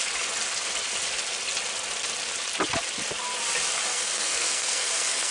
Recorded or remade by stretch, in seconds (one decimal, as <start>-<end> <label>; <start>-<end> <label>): 0.0-3.9 recorded; 3.9-5.3 remade